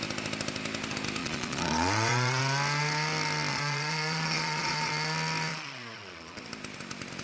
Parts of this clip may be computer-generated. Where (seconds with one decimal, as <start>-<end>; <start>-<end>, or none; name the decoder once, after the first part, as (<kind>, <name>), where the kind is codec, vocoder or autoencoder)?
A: 1.2-2.4 (vocoder, Vocos); 3.5-4.9; 5.5-6.4